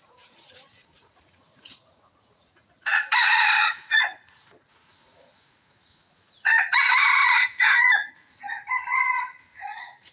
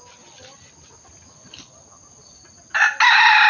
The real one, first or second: second